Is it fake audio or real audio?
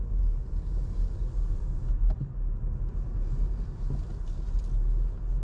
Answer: real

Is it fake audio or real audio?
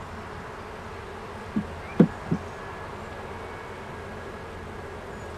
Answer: real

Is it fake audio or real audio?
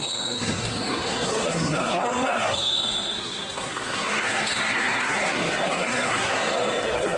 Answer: fake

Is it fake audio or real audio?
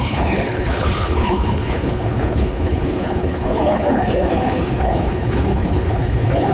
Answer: fake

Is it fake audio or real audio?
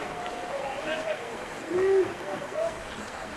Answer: fake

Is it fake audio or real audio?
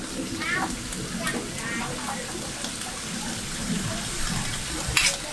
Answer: real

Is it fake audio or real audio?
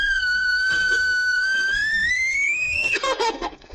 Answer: fake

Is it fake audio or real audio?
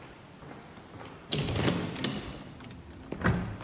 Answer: real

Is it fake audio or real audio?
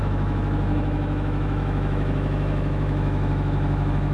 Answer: fake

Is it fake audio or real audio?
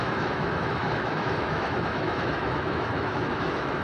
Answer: fake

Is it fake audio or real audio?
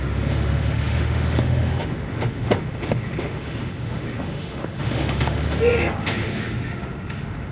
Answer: fake